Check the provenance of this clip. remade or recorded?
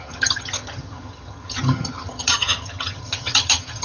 remade